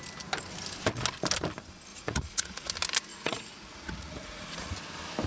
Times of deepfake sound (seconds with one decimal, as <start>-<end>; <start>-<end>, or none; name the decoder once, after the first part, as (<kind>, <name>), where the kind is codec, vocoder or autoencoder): 1.9-2.7 (vocoder, Vocos); 3.1-4.7